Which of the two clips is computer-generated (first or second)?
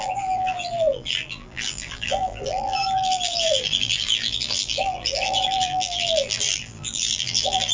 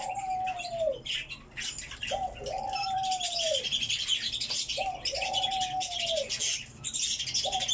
first